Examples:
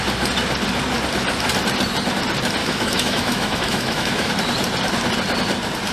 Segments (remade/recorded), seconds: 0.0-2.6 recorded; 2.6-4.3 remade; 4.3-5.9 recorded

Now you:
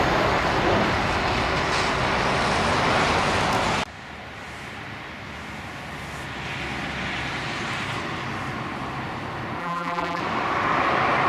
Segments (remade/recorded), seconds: 0.0-9.6 recorded; 9.6-10.2 remade; 10.2-11.3 recorded

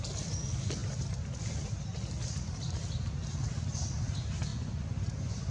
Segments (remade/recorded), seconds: 0.0-4.5 recorded; 4.5-5.5 remade

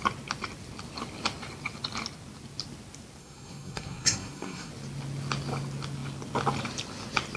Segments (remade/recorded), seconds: 0.0-3.2 recorded; 3.2-4.7 remade; 4.7-7.4 recorded

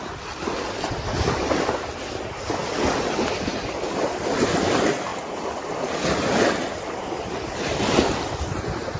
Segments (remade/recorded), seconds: 0.0-9.0 recorded

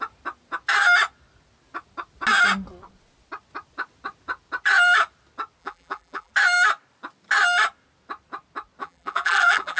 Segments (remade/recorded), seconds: 0.0-5.6 recorded; 5.6-6.3 remade; 6.3-8.8 recorded; 8.8-9.8 remade

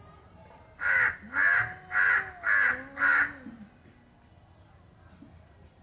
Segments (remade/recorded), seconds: 0.0-5.8 recorded